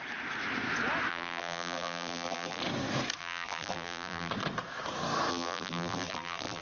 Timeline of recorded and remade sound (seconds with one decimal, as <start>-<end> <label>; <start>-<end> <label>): 0.0-1.1 recorded; 1.1-2.6 remade; 2.6-3.2 recorded; 3.2-4.3 remade; 4.3-5.3 recorded; 5.3-6.6 remade